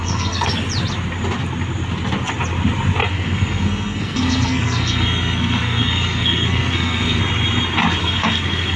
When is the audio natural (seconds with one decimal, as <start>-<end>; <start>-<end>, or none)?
0.5-3.0; 7.2-8.0